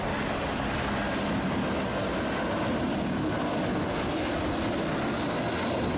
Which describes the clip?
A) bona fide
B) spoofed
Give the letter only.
A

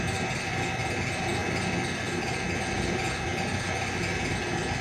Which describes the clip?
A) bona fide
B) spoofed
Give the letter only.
A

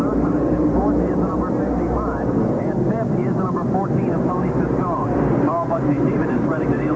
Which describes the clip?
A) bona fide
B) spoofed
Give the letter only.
B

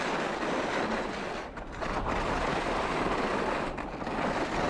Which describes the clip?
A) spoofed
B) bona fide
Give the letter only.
B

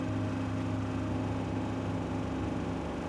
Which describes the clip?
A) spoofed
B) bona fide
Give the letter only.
B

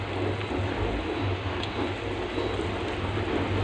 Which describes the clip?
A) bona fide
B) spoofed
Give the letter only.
A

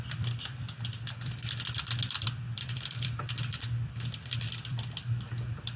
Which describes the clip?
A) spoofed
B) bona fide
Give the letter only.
A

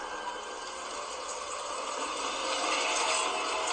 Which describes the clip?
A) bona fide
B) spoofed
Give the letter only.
A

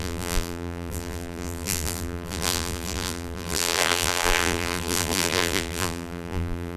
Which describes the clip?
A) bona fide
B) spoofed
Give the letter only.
B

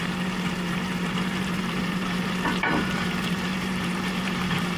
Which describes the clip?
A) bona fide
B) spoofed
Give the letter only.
B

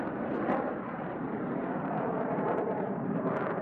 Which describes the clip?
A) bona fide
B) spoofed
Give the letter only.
B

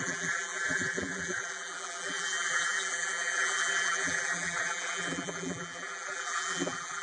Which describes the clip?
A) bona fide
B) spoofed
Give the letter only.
B